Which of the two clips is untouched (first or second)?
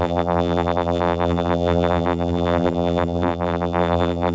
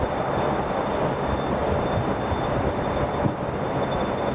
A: second